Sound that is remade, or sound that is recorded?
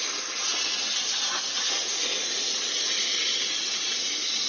recorded